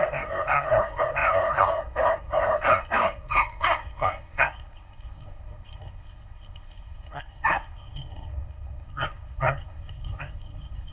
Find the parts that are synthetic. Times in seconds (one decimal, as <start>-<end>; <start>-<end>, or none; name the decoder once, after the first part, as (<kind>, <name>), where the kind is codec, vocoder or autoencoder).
0.0-10.9 (codec, SNAC)